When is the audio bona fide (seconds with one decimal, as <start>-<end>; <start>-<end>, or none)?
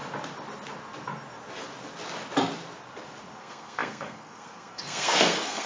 0.0-3.4